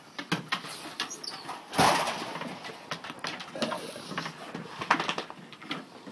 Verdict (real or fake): real